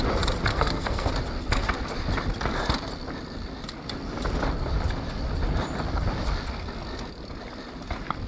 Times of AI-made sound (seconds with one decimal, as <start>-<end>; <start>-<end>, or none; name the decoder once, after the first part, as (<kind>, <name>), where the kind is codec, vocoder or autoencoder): 0.5-1.1 (codec, SNAC)